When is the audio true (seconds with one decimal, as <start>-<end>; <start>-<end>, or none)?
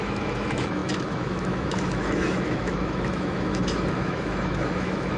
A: none